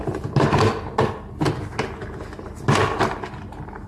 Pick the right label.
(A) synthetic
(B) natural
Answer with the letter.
B